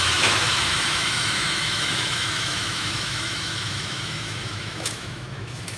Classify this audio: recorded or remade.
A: remade